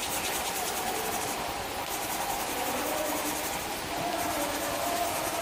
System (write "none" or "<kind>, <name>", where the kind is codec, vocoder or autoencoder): none